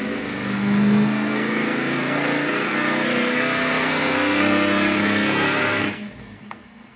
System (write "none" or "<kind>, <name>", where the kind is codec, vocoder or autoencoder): codec, SNAC